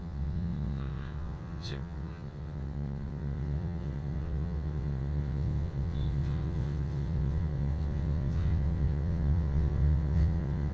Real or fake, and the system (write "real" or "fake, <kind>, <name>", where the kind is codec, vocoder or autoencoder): fake, vocoder, WaveNeXt